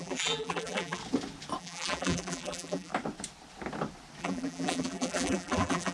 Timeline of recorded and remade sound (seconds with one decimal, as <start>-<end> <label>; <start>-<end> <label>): 0.0-1.0 remade; 1.0-1.6 recorded; 1.6-2.9 remade; 2.9-4.2 recorded; 4.2-5.9 remade